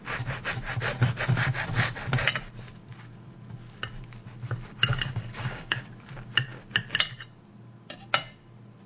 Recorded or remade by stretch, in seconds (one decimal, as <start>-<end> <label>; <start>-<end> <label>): 0.0-4.7 recorded; 4.7-5.8 remade; 5.8-8.9 recorded